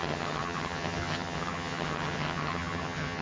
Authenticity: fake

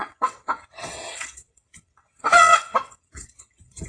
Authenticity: fake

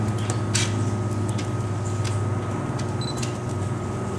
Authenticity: real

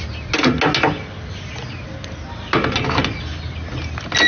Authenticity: real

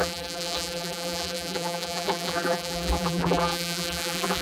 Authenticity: fake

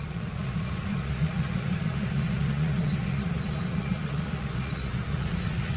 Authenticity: fake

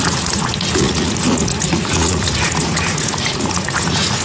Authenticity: fake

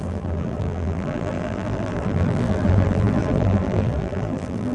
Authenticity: fake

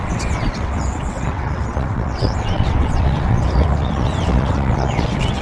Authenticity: fake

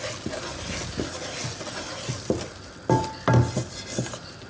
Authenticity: real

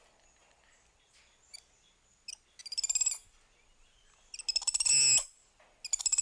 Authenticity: real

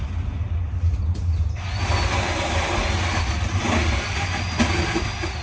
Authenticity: real